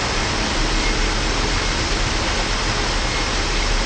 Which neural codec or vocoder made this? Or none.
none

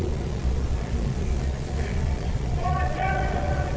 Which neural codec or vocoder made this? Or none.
vocoder, Vocos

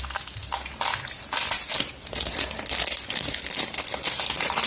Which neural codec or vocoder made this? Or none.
none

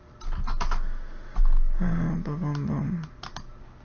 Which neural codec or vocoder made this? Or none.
none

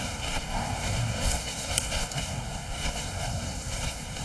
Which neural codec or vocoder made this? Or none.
codec, SNAC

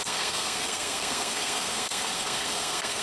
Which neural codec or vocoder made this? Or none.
codec, SNAC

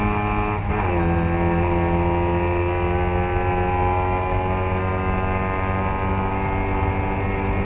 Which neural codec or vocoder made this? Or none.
none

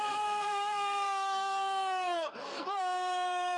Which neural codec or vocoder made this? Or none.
codec, SNAC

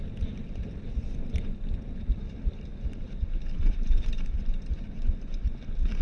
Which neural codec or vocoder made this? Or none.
none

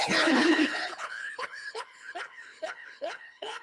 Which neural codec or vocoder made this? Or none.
codec, HILCodec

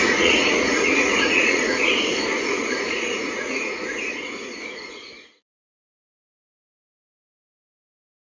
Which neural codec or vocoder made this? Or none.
vocoder, Vocos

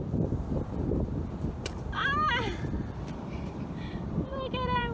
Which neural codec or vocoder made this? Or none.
vocoder, BigVGAN v2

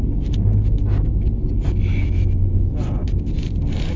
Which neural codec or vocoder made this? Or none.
none